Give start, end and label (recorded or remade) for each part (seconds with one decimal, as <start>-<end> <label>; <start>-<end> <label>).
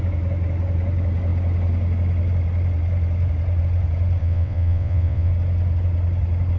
0.0-4.2 recorded; 4.2-5.3 remade; 5.3-6.6 recorded